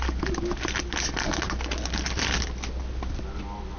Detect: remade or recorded recorded